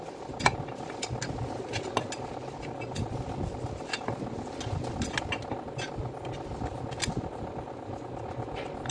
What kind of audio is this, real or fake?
real